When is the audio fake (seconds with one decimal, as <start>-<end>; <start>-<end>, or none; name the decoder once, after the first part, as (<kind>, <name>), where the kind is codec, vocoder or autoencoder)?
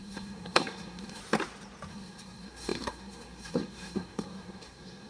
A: 0.0-1.2 (codec, SNAC); 1.9-5.1